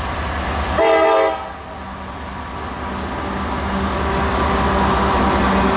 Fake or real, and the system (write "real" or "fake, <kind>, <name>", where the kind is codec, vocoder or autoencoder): real